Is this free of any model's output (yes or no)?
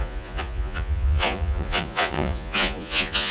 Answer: no